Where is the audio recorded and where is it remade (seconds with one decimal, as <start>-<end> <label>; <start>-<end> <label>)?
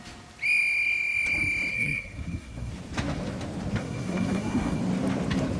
0.0-1.7 recorded; 1.7-2.7 remade; 2.7-3.8 recorded; 3.8-4.8 remade; 4.8-5.6 recorded